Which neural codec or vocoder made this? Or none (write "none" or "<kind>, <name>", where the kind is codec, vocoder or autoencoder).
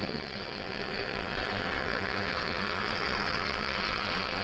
vocoder, WaveNeXt